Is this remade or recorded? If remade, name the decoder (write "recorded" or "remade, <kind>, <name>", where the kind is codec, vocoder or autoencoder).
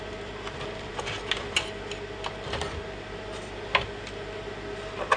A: recorded